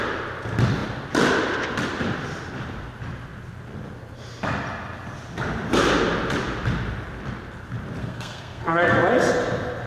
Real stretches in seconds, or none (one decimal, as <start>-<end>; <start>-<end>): 0.0-8.0; 8.9-9.9